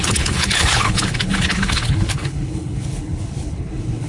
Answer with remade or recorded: remade